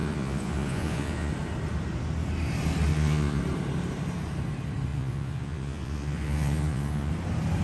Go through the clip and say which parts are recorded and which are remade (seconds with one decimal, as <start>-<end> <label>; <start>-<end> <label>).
0.0-1.3 remade; 1.3-2.9 recorded; 2.9-3.4 remade; 3.4-4.9 recorded; 4.9-7.1 remade; 7.1-7.6 recorded